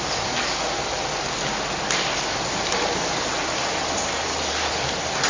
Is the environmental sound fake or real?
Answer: real